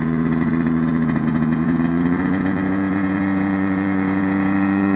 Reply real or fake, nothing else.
fake